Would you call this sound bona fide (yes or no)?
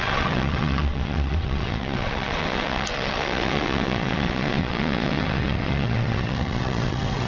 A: no